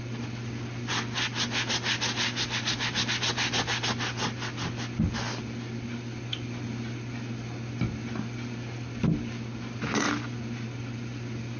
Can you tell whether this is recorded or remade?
recorded